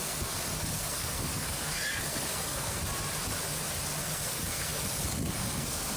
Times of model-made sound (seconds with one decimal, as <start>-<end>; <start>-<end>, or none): 0.0-2.8; 4.0-6.0